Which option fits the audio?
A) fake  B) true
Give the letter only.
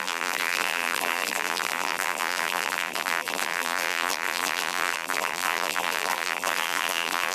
A